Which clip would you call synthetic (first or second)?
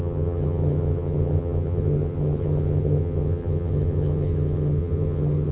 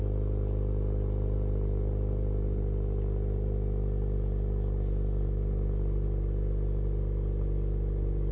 first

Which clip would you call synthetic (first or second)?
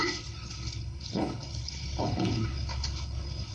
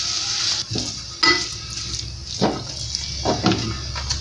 first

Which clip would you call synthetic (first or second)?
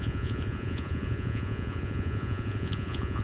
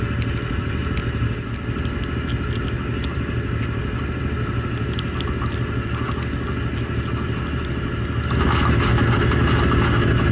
first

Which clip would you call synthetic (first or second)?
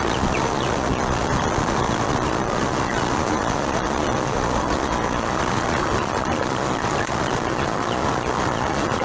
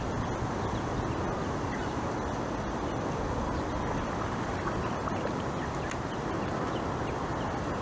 first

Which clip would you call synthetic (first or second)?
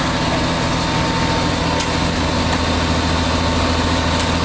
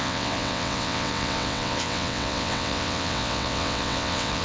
second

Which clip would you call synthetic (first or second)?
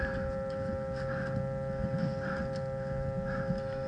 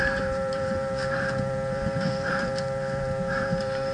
second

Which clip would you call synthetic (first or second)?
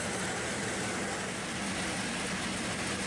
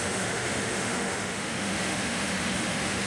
second